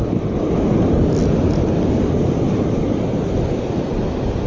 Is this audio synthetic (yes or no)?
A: no